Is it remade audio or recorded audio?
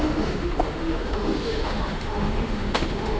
remade